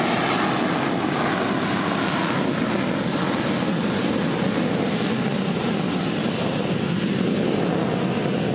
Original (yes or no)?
yes